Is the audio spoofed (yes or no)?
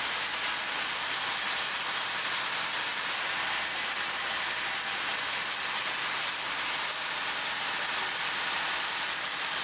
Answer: no